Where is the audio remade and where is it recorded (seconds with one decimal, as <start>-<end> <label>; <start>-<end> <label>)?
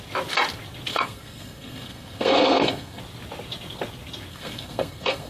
0.0-0.9 recorded; 0.9-3.0 remade; 3.0-4.3 recorded; 4.3-5.3 remade